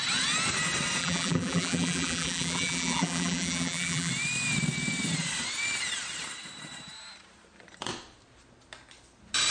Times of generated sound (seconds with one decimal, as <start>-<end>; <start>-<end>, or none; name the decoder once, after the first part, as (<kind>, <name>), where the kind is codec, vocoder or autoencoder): 1.0-4.1 (vocoder, BigVGAN v2)